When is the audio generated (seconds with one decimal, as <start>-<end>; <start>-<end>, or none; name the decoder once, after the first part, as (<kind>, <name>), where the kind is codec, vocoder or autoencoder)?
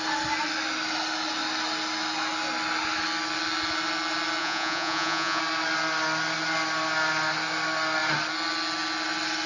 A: 4.4-5.4 (vocoder, Vocos)